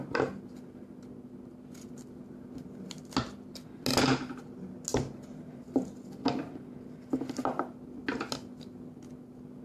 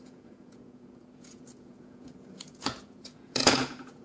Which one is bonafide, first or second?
first